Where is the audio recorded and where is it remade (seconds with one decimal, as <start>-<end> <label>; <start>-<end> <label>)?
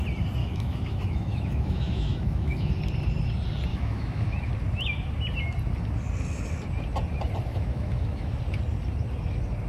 0.0-0.4 recorded; 0.4-2.7 remade; 2.7-3.7 recorded; 3.7-4.5 remade; 4.5-7.5 recorded; 7.5-8.4 remade; 8.4-9.7 recorded